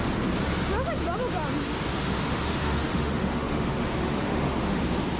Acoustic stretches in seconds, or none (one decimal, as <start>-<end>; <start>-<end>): 0.0-1.7; 4.8-5.2